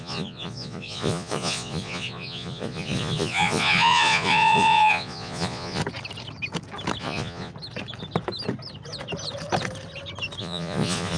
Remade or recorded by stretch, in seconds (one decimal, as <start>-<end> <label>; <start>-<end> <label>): 0.0-5.8 remade; 5.8-7.0 recorded; 7.0-7.5 remade; 7.5-10.4 recorded; 10.4-11.2 remade

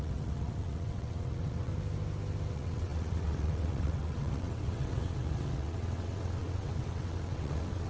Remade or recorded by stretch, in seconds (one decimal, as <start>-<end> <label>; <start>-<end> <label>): 0.0-1.7 remade; 1.7-2.5 recorded; 2.5-7.9 remade